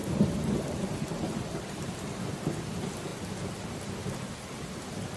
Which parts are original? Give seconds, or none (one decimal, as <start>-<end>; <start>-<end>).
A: 2.3-5.2